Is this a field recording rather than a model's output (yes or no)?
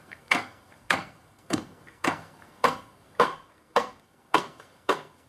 no